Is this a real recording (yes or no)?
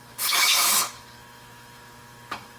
no